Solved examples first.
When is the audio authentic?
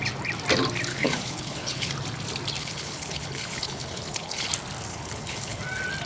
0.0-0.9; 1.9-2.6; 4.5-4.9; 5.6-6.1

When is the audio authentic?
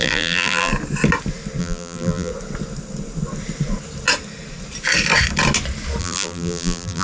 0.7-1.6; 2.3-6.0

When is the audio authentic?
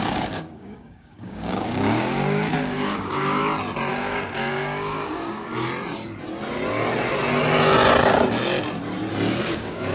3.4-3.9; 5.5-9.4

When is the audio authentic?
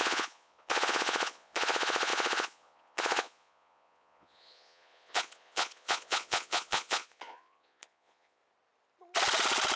8.4-9.8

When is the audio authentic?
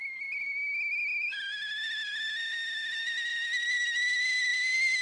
0.0-5.0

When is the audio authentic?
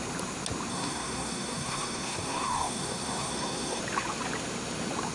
0.0-0.7; 3.8-5.1